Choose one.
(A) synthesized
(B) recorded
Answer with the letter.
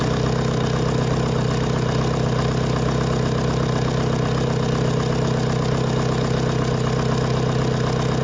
B